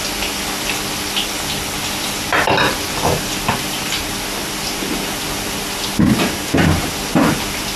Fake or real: real